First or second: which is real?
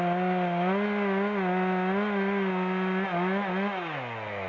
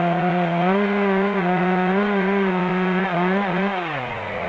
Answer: first